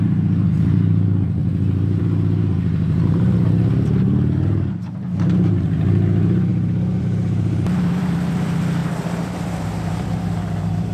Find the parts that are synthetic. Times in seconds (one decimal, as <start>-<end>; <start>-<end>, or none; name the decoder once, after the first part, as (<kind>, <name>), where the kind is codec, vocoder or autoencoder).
0.0-6.5 (vocoder, BigVGAN v2); 7.0-10.9